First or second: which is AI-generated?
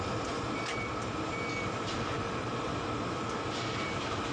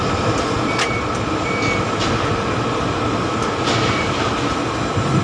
second